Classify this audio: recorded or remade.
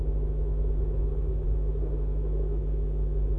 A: remade